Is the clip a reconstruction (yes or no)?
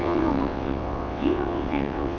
yes